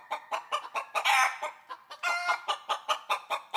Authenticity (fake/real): real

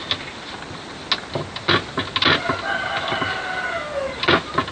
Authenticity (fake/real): real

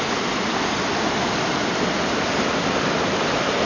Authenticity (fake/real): fake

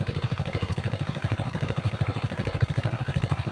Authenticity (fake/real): fake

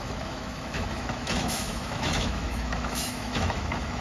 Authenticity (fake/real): fake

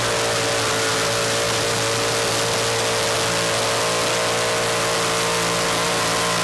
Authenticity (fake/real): real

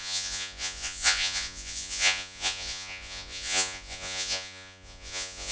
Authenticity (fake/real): fake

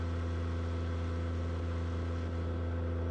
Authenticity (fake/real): real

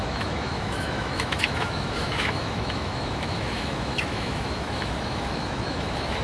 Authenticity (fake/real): fake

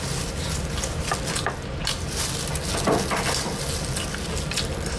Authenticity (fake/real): real